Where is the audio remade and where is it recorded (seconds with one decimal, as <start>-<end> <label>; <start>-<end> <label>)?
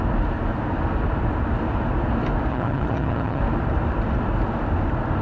0.0-2.5 recorded; 2.5-3.4 remade; 3.4-5.2 recorded